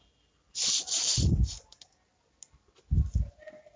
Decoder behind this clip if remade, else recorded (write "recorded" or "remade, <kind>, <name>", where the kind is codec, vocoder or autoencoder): recorded